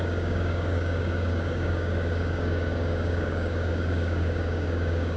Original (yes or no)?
no